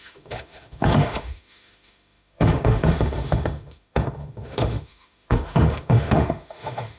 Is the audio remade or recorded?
remade